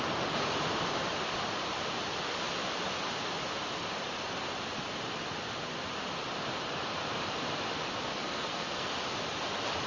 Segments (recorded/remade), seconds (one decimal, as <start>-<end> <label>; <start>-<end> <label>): 0.0-8.1 recorded; 8.1-8.9 remade; 8.9-9.9 recorded